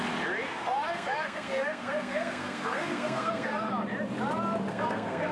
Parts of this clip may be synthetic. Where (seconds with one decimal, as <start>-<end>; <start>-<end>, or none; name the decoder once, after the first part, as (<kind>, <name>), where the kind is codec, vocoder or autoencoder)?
0.5-3.7 (codec, SNAC); 4.7-5.3